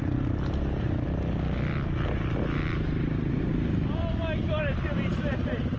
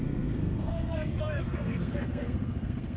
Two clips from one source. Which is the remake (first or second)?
second